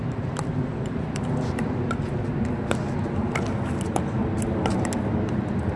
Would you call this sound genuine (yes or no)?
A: yes